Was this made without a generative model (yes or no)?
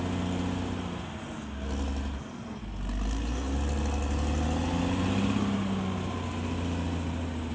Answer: yes